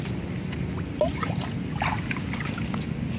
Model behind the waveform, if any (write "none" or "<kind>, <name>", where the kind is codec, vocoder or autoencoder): none